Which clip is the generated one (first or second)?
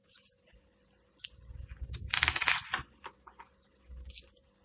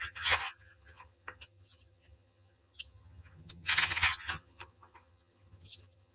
second